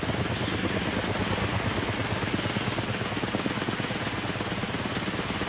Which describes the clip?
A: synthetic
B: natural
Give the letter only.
B